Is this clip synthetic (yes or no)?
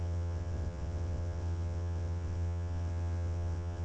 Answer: yes